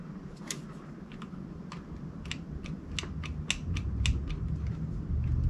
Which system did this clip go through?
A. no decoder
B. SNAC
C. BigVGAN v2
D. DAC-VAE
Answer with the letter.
A